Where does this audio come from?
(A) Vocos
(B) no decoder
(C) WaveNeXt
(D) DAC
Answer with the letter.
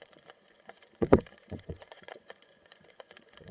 A